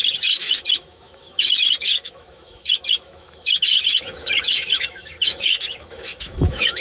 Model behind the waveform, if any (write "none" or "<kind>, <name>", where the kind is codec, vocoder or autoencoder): autoencoder, DAC-VAE